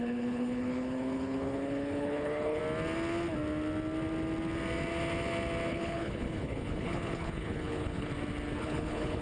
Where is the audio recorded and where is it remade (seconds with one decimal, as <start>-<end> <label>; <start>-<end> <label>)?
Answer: 0.0-2.6 remade; 2.6-5.7 recorded; 5.7-8.1 remade; 8.1-8.6 recorded; 8.6-9.2 remade